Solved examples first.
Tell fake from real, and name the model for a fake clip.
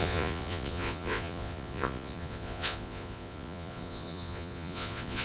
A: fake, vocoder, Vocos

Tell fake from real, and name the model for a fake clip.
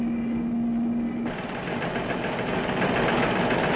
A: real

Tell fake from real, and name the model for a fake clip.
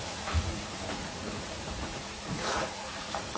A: fake, vocoder, Vocos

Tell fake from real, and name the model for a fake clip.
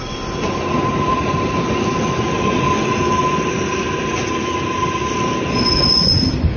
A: real